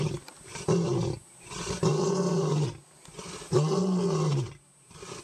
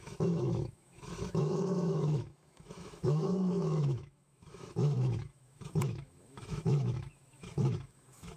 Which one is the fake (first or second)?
second